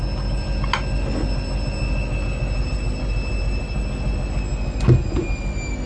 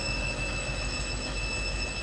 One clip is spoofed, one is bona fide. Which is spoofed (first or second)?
second